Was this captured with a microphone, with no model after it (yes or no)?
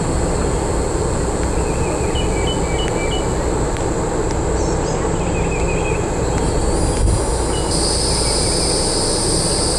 yes